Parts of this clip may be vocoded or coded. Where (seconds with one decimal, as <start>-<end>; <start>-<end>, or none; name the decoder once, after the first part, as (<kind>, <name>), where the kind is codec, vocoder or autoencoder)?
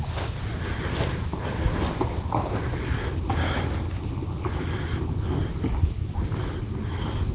2.4-3.7 (vocoder, BigVGAN v2)